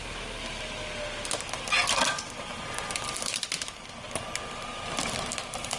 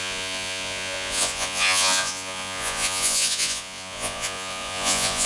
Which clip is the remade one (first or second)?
second